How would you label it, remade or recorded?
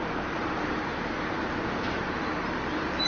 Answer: remade